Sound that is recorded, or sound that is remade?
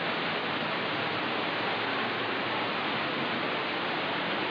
recorded